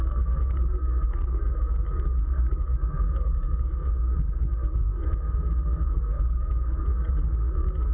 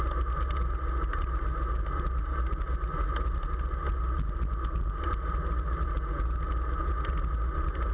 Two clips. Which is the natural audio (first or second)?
second